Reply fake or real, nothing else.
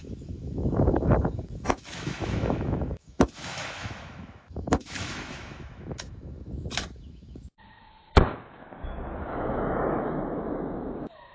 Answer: fake